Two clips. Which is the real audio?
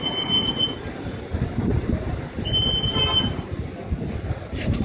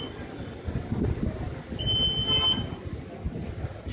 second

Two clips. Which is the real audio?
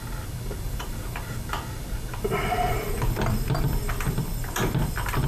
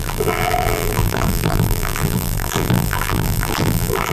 first